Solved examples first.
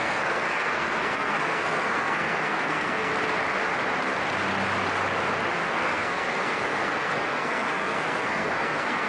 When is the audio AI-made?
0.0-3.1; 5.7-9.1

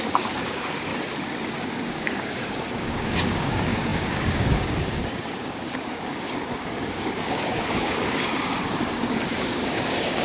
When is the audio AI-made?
0.0-0.9; 1.6-10.2

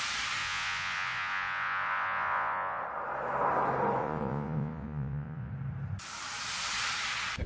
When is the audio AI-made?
0.4-2.8; 4.0-5.5

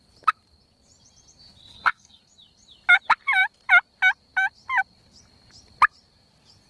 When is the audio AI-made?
1.7-2.2